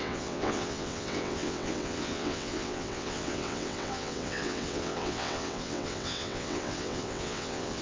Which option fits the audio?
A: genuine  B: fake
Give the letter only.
B